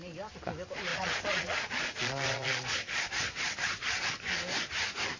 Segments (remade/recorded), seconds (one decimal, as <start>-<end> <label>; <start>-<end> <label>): 0.0-0.9 recorded; 0.9-4.0 remade; 4.0-5.2 recorded